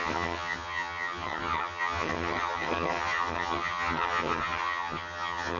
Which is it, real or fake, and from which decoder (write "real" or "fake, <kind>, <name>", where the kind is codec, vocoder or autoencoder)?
fake, vocoder, HiFi-GAN